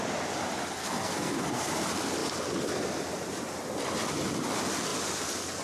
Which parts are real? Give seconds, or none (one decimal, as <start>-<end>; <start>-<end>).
0.0-0.8; 1.7-5.6